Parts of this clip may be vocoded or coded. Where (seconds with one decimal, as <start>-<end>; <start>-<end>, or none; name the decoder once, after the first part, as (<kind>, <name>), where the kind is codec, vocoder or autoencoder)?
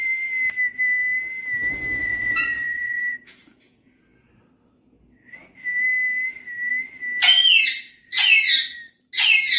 2.0-4.3 (vocoder, Vocos)